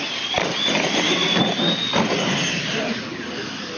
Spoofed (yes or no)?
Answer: no